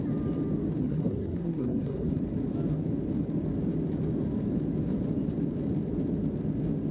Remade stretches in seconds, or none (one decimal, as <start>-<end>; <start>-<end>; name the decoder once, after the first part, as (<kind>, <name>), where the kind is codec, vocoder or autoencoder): 0.8-2.1 (codec, SNAC)